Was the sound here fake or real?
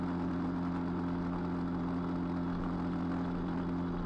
real